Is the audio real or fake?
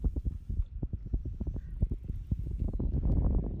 real